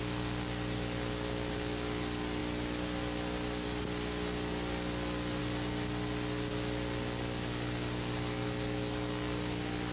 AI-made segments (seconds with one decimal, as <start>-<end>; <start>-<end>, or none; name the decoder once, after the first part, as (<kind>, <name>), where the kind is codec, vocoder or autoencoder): none